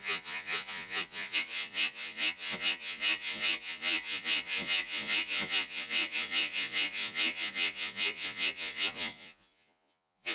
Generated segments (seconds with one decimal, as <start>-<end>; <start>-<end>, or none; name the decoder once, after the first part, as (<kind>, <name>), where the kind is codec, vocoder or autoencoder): 0.0-10.3 (vocoder, Vocos)